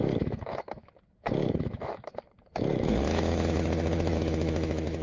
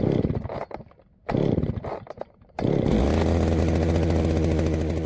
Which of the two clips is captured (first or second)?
second